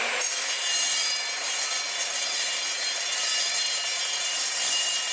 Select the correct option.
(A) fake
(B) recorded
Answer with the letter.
A